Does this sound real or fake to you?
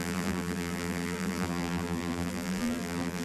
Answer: fake